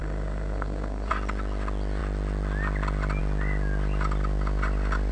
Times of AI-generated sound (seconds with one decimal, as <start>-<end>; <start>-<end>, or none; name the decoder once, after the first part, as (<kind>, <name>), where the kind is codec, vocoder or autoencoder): 0.0-1.1 (codec, SNAC)